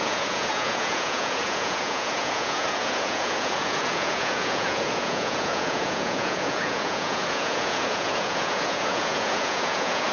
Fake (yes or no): yes